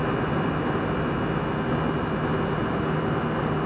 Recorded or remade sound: recorded